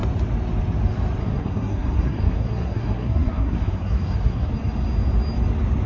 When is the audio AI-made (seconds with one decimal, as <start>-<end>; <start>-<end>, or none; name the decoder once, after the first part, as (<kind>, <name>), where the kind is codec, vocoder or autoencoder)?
1.2-4.5 (codec, SNAC)